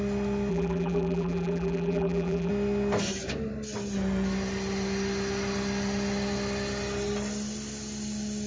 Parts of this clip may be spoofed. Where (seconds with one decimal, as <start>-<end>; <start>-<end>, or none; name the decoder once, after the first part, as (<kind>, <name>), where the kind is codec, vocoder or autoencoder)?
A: 0.5-2.5 (vocoder, BigVGAN v2)